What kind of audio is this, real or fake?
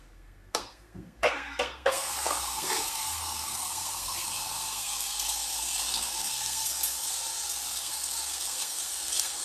fake